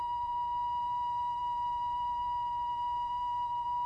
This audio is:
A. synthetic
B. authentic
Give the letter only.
A